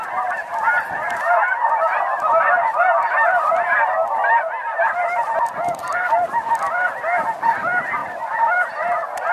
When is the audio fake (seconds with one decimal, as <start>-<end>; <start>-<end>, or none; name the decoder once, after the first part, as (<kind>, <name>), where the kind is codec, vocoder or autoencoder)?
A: none